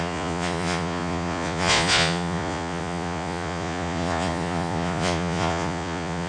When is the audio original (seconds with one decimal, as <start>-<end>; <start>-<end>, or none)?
none